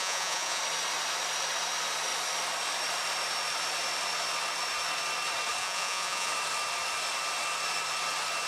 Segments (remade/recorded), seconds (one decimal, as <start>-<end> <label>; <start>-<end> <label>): 0.0-0.6 remade; 0.6-5.6 recorded; 5.6-6.3 remade; 6.3-8.5 recorded